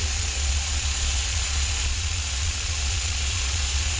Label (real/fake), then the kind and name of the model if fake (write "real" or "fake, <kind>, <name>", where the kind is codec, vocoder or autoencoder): fake, vocoder, Vocos